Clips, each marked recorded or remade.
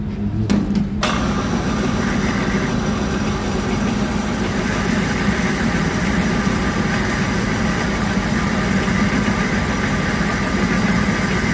recorded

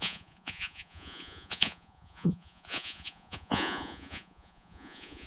remade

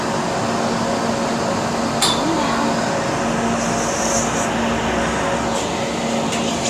recorded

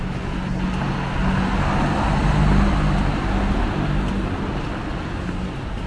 recorded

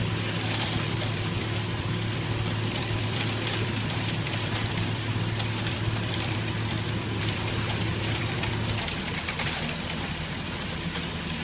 remade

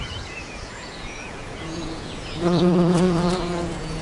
remade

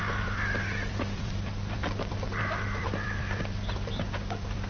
remade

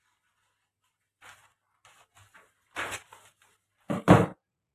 recorded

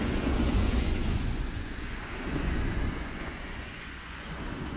remade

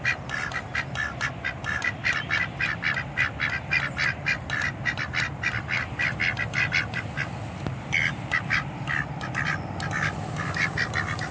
recorded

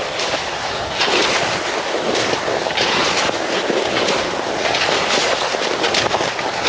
recorded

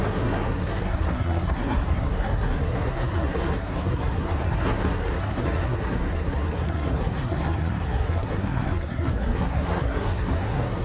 remade